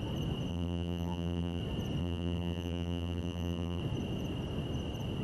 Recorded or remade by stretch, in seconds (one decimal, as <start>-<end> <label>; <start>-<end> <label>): 0.0-0.5 recorded; 0.5-1.6 remade; 1.6-2.0 recorded; 2.0-3.8 remade; 3.8-5.2 recorded